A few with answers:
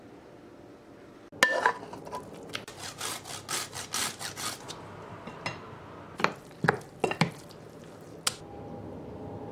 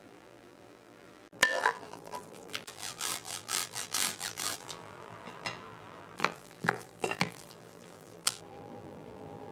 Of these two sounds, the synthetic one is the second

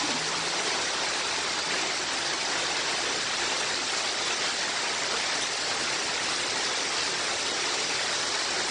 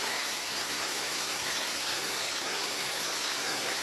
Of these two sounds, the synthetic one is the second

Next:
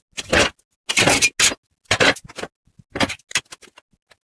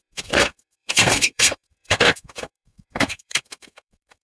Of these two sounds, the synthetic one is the second